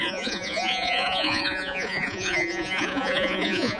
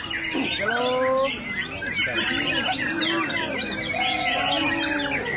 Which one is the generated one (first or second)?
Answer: first